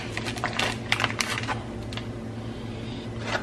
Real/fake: real